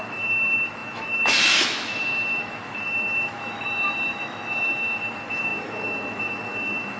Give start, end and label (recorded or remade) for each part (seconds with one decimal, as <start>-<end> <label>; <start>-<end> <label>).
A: 0.0-7.0 remade